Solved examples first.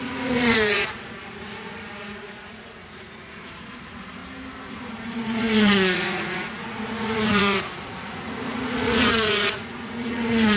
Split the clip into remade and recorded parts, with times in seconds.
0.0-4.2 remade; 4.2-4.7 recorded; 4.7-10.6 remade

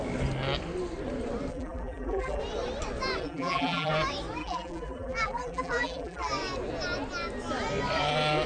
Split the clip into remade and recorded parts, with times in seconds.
0.0-1.5 recorded; 1.5-2.4 remade; 2.4-3.2 recorded; 3.2-3.9 remade; 3.9-4.4 recorded; 4.4-6.3 remade; 6.3-8.5 recorded

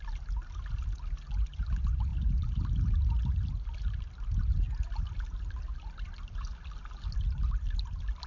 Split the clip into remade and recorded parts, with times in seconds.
0.0-8.3 recorded